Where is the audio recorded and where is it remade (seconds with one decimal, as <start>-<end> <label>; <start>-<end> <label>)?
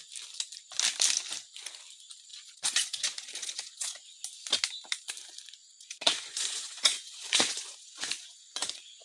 0.0-2.3 recorded; 2.3-4.2 remade; 4.2-5.6 recorded; 5.6-9.0 remade